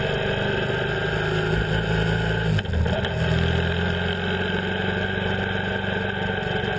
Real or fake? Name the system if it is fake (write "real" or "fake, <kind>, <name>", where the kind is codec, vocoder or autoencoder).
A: real